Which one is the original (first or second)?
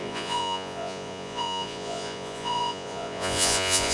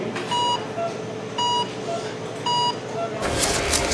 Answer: second